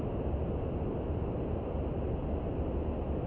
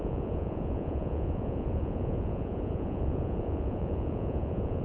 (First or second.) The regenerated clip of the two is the second